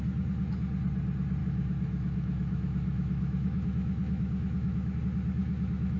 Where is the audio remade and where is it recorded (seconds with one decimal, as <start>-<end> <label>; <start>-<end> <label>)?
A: 0.0-1.4 recorded; 1.4-5.0 remade; 5.0-5.4 recorded; 5.4-6.0 remade